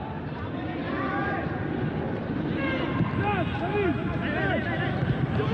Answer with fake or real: real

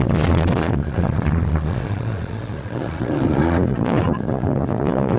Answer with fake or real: fake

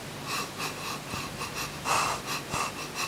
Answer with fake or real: real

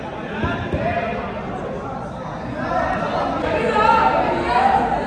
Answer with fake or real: real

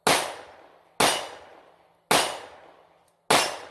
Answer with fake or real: real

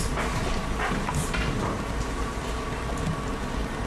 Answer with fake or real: real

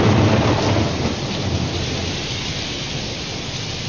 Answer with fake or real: real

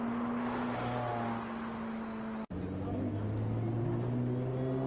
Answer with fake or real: real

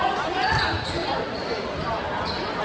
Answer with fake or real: real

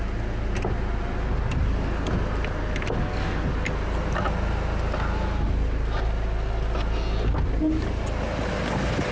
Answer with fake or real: real